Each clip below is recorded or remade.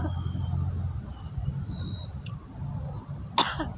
recorded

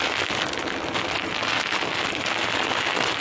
recorded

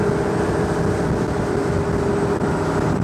recorded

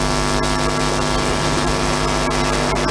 recorded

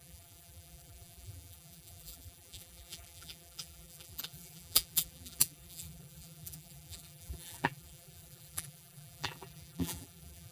remade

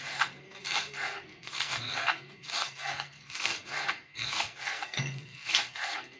remade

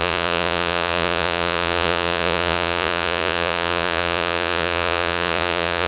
remade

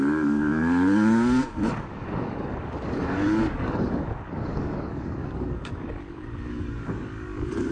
remade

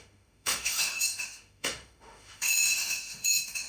remade